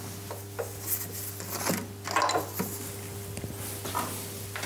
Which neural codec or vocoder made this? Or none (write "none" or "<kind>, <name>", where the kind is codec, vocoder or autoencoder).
none